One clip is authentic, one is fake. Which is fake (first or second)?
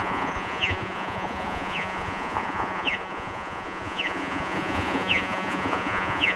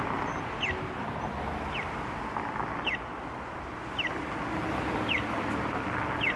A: first